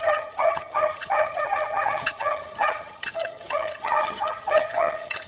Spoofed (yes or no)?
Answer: yes